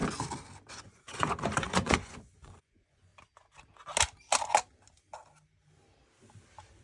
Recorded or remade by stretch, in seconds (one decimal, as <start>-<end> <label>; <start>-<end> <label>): 0.0-0.7 recorded; 0.7-3.1 remade; 3.1-6.8 recorded